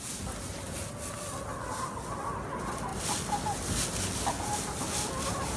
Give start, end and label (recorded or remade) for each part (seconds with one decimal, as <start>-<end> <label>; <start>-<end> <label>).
0.0-5.6 recorded